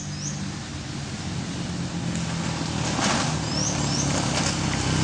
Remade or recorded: recorded